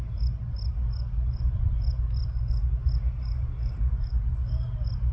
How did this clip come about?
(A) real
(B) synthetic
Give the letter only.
A